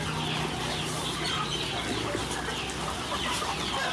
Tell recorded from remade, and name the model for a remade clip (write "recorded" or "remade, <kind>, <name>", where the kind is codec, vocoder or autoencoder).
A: recorded